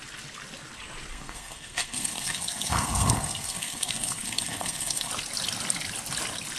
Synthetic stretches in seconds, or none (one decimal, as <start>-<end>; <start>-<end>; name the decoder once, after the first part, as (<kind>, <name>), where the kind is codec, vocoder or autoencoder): 1.1-5.1 (codec, SNAC)